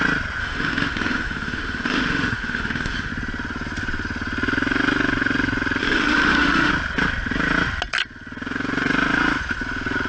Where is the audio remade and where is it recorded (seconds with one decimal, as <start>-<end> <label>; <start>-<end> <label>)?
0.0-0.4 recorded; 0.4-3.1 remade; 3.1-5.8 recorded; 5.8-6.7 remade; 6.7-10.1 recorded